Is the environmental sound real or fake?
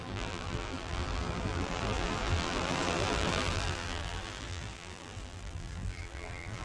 fake